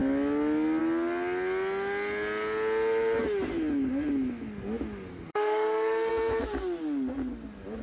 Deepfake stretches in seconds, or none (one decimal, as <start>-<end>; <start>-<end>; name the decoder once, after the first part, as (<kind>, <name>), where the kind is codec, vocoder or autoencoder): 5.1-6.1 (codec, SNAC)